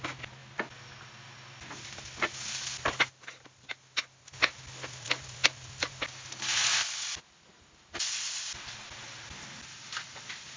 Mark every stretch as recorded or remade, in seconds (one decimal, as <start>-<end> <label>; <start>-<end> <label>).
0.0-10.6 recorded